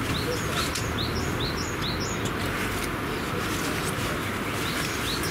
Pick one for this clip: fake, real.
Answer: real